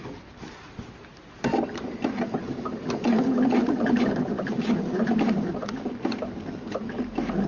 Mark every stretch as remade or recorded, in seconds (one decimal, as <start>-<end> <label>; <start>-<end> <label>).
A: 0.0-7.5 recorded